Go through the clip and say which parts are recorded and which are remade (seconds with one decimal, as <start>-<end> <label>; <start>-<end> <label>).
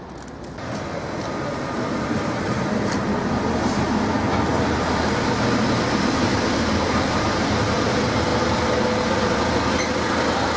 0.0-4.5 recorded; 4.5-5.0 remade; 5.0-10.6 recorded